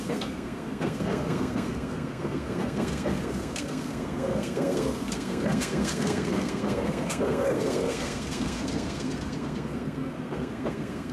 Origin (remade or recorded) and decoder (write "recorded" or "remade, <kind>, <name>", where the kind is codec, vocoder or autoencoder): remade, codec, SNAC